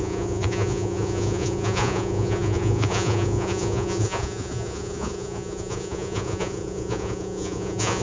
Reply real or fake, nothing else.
fake